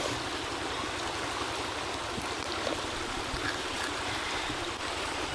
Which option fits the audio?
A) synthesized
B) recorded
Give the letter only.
B